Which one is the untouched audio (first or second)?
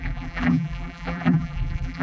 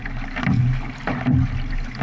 second